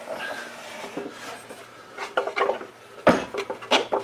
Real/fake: real